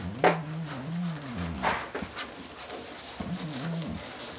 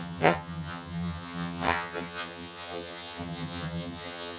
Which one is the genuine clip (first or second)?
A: first